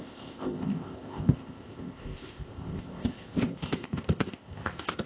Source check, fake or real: fake